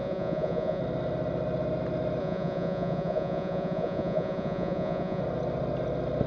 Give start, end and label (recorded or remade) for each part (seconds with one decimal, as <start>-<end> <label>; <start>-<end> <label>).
0.0-0.8 remade; 0.8-2.2 recorded; 2.2-5.2 remade; 5.2-6.3 recorded